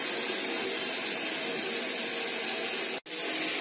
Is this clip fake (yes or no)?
no